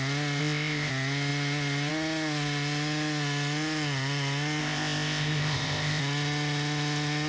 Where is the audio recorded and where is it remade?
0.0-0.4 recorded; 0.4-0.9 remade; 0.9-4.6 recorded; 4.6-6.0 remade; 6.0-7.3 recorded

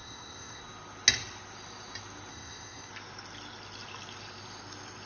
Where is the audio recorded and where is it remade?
0.0-0.6 remade; 0.6-2.3 recorded; 2.3-2.9 remade; 2.9-5.1 recorded